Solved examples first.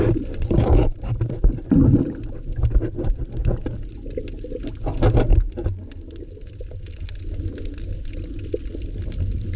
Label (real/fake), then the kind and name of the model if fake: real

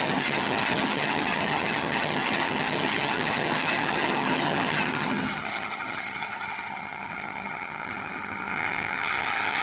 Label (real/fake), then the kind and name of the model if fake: fake, vocoder, HiFi-GAN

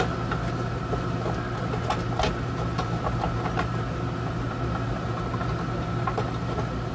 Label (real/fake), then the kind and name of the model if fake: real